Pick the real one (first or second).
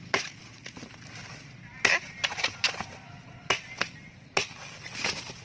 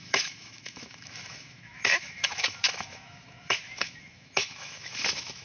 first